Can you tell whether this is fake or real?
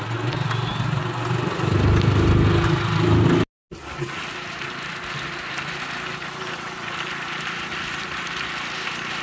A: real